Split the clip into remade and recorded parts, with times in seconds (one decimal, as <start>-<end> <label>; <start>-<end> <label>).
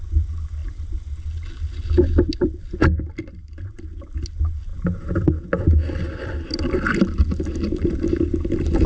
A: 0.0-8.9 recorded